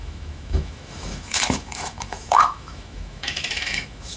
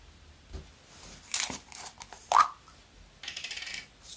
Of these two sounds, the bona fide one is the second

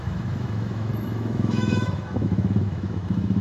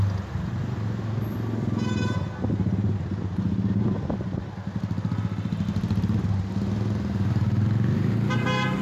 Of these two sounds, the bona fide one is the second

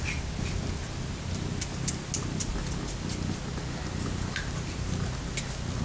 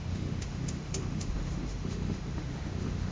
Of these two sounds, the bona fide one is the first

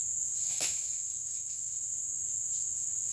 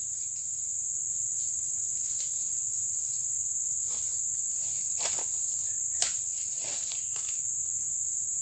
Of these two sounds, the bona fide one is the second